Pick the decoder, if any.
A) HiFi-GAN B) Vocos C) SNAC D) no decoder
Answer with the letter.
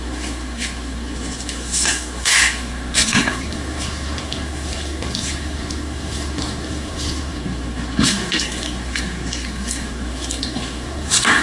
C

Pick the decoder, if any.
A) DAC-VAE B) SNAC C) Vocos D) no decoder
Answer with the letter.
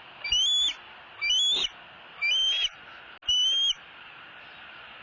D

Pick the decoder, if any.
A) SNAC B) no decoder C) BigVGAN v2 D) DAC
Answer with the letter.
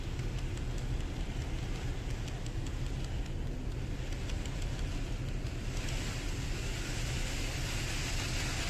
B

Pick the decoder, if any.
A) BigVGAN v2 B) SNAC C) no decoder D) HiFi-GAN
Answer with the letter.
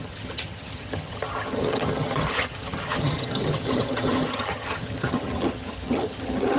D